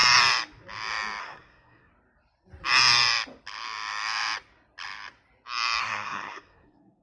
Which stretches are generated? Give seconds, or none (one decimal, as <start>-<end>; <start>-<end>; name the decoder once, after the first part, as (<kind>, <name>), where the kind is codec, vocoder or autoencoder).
1.2-1.9 (codec, SNAC); 5.8-7.0